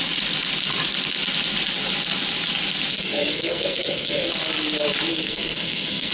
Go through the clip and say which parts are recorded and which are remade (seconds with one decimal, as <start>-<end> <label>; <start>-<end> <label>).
0.0-2.9 recorded; 2.9-4.3 remade; 4.3-5.1 recorded; 5.1-6.1 remade